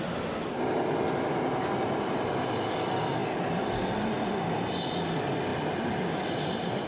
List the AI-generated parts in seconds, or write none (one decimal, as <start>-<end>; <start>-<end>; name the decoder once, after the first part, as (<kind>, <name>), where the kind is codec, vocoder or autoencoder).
3.2-3.7 (vocoder, BigVGAN v2)